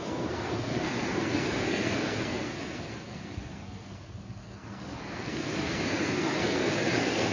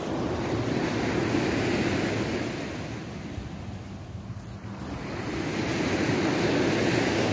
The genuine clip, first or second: second